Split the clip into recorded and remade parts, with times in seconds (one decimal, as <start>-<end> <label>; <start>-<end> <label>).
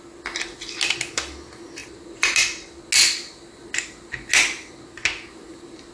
0.0-5.9 recorded